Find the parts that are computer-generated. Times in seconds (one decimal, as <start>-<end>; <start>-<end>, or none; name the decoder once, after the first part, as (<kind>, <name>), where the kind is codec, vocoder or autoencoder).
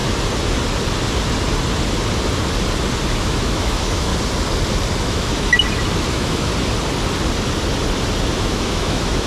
3.2-4.1 (autoencoder, DAC-VAE); 5.0-5.5; 6.1-6.5; 8.4-9.3